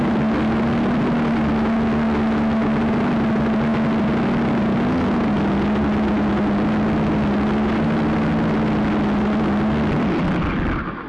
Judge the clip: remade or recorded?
recorded